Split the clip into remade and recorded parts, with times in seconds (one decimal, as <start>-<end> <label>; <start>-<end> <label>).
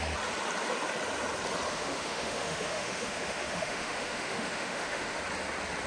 0.0-1.7 recorded; 1.7-5.2 remade; 5.2-5.9 recorded